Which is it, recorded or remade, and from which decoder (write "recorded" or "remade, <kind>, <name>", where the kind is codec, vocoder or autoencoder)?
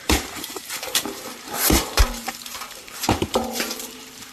remade, vocoder, BigVGAN v2